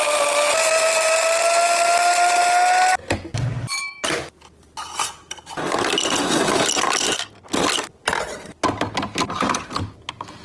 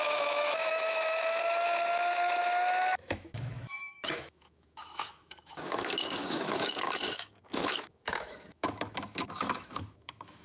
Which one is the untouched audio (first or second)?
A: first